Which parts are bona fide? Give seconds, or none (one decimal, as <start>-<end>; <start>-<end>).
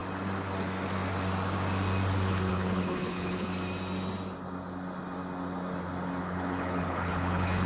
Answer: 0.0-2.5; 3.5-6.2